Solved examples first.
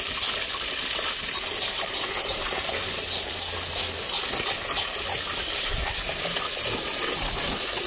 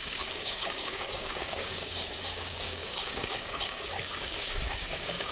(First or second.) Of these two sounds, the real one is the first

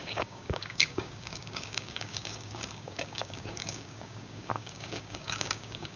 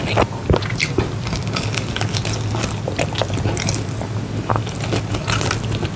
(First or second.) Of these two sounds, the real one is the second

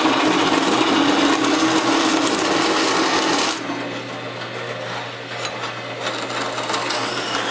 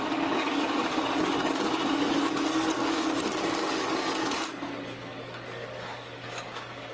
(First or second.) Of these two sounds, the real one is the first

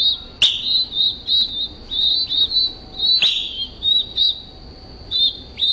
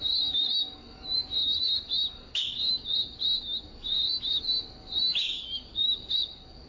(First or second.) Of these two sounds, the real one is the first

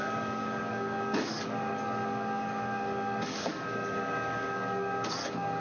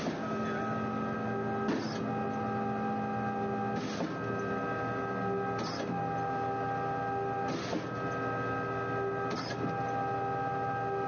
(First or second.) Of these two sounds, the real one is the second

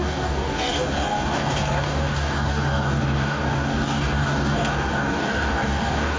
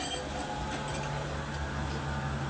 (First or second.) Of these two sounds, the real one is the second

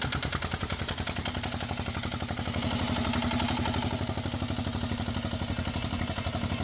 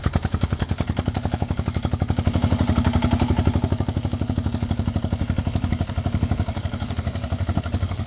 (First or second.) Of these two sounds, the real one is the first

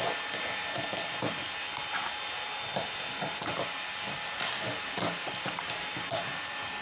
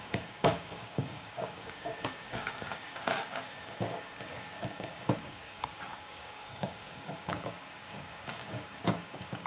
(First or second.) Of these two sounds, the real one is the first